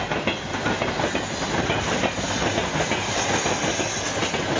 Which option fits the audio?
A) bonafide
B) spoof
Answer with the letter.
A